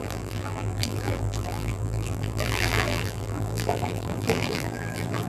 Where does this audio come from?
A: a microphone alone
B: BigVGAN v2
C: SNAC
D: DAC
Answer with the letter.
B